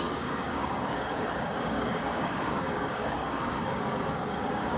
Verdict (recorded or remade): remade